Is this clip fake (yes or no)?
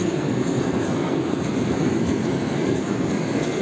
yes